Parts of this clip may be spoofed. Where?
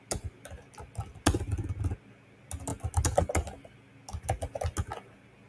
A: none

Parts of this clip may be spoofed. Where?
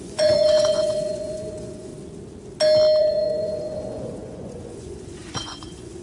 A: 0.0-1.9 (vocoder, Vocos); 3.0-6.0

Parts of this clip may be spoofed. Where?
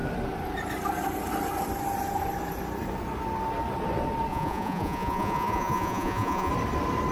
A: 4.3-6.5 (vocoder, Vocos)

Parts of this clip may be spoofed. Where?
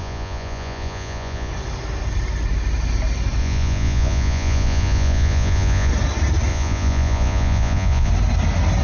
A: 0.0-1.5 (vocoder, Vocos); 3.4-5.9; 6.5-8.1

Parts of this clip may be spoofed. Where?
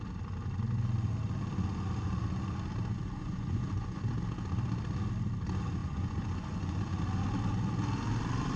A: 3.2-4.0 (vocoder, Vocos); 5.8-7.0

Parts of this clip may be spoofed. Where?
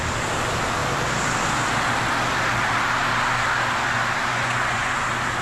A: 4.3-5.0 (vocoder, Vocos)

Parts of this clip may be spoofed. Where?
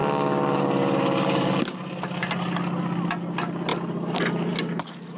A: none